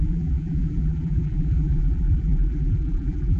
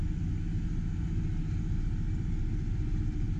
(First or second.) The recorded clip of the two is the second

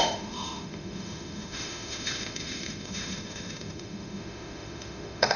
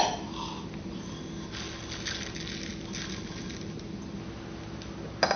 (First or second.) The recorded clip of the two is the second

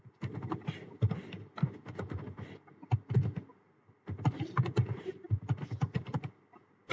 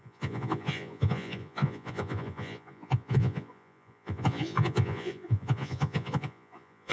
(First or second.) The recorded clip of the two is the first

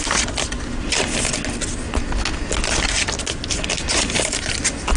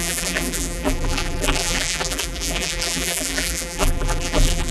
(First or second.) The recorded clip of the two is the first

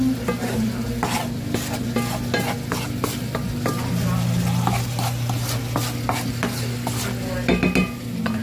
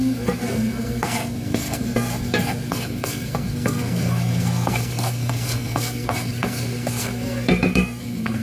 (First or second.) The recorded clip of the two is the first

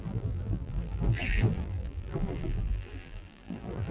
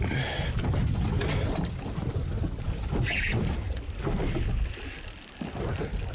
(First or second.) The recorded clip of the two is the second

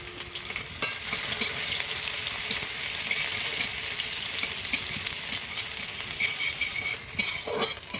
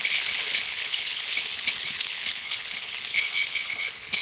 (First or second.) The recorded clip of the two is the first